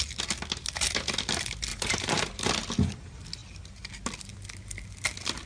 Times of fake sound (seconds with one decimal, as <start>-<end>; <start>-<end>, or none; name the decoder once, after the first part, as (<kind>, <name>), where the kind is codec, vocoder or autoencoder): 1.7-2.5 (vocoder, BigVGAN v2)